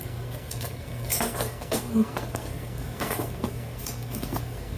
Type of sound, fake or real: fake